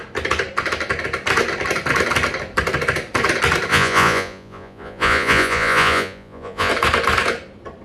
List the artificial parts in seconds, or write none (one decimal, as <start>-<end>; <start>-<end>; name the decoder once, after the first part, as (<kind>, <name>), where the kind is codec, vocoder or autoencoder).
3.7-6.7 (vocoder, Vocos)